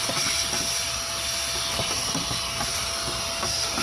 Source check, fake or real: real